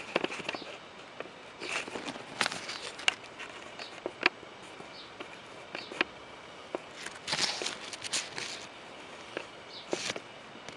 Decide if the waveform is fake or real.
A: real